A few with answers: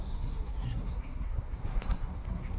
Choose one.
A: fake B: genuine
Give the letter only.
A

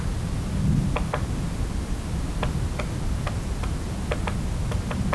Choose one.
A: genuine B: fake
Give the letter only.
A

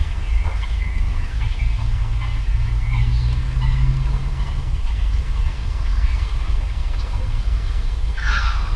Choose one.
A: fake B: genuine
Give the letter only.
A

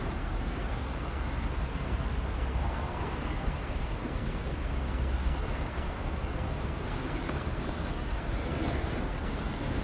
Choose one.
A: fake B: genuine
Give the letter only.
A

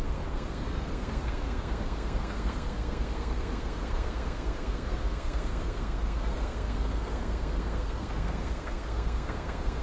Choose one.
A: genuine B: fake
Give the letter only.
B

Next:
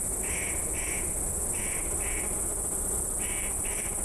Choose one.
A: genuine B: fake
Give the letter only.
A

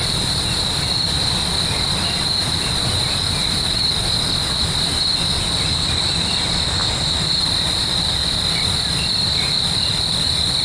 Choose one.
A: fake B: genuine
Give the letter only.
B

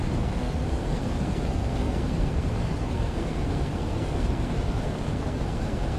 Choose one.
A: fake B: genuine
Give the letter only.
A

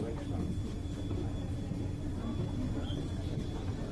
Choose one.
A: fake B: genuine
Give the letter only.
B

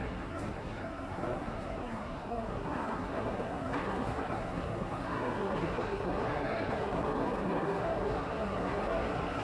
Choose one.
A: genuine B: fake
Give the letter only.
B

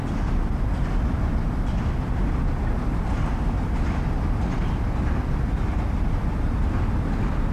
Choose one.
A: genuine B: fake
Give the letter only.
A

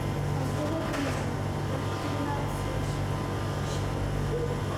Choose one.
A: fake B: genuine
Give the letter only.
B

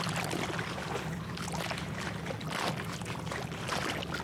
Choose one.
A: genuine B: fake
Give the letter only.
A